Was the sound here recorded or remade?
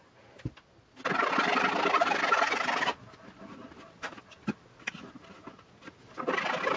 recorded